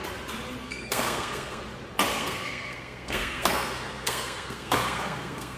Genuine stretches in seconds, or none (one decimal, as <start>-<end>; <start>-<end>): 0.0-0.6; 1.6-2.1